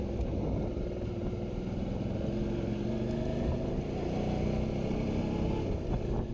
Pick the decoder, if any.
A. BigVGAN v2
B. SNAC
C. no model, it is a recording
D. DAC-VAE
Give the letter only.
C